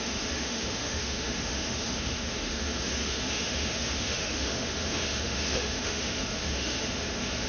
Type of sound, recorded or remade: remade